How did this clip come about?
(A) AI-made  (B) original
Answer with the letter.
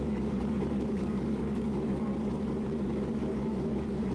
A